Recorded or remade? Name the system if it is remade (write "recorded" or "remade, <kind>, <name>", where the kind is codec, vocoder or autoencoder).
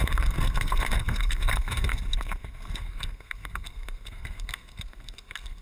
remade, codec, SNAC